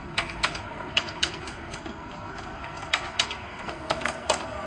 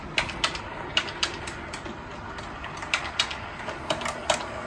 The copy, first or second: first